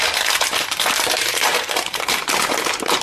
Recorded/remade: remade